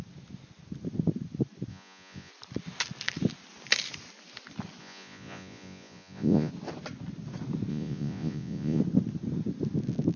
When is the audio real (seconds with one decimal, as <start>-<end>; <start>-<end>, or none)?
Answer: 0.0-1.7; 2.3-4.8; 6.5-7.7; 8.8-10.2